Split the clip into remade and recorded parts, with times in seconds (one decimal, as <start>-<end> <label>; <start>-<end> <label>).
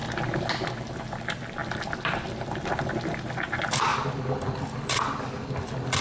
0.0-0.5 remade; 0.5-1.6 recorded; 1.6-2.9 remade; 2.9-6.0 recorded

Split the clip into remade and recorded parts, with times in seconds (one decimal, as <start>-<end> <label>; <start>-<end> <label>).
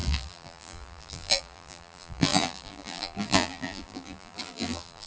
0.0-5.1 remade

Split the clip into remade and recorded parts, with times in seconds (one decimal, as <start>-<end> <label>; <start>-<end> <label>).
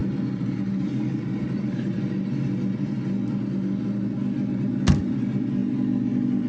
0.0-2.0 remade; 2.0-6.5 recorded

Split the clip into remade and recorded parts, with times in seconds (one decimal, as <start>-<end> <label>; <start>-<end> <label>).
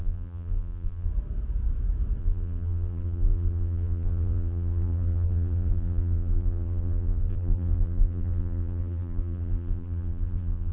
0.0-1.1 remade; 1.1-2.2 recorded; 2.2-10.7 remade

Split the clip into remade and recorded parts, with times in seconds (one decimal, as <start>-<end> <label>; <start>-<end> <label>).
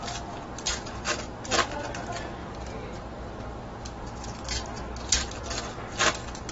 0.0-6.5 recorded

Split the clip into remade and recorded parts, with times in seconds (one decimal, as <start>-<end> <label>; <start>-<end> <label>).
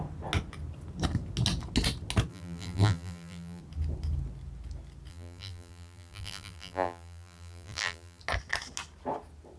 0.0-2.3 recorded; 2.3-3.6 remade; 3.6-5.1 recorded; 5.1-8.2 remade; 8.2-9.6 recorded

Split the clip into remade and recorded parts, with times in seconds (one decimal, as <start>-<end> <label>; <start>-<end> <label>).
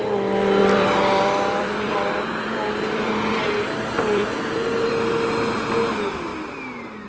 0.0-0.6 recorded; 0.6-4.9 remade; 4.9-7.1 recorded